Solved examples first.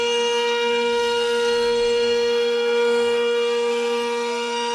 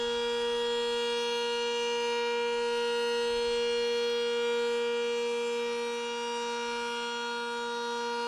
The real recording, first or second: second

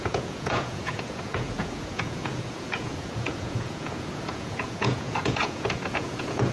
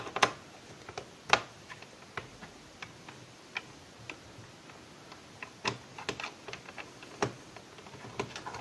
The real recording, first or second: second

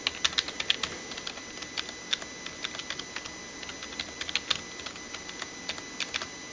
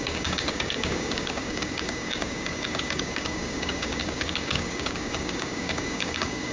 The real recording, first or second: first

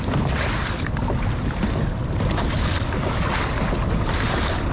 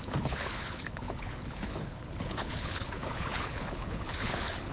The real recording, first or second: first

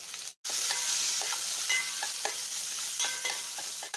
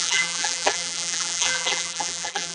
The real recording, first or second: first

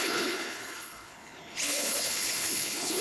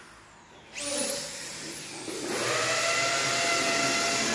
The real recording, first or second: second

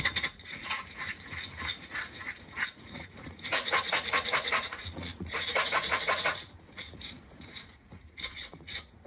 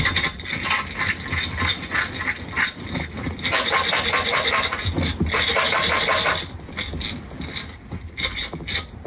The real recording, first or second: second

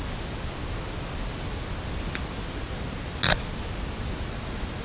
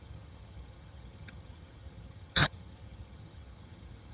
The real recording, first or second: first